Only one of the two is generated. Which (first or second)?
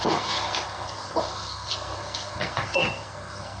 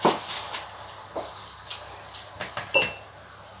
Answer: first